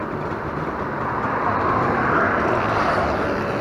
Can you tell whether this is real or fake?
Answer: real